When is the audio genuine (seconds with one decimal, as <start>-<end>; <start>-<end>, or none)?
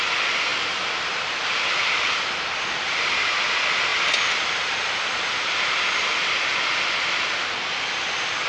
0.0-8.5